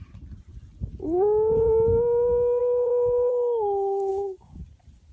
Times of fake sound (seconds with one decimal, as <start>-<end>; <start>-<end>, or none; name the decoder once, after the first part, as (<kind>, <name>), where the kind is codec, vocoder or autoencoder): 1.9-2.6 (codec, DAC); 4.1-4.6